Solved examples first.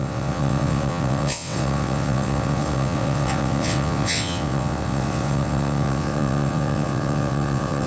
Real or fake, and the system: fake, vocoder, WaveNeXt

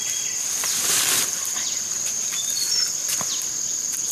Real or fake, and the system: fake, vocoder, BigVGAN v2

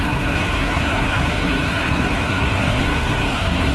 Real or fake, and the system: fake, codec, SNAC